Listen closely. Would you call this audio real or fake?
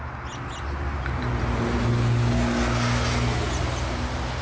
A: real